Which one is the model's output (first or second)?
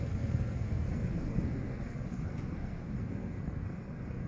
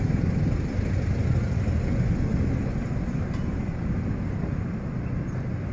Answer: first